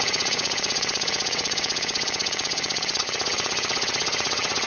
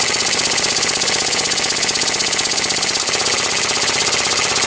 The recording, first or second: second